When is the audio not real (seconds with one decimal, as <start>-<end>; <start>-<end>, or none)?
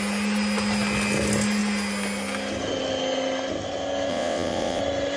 4.1-4.8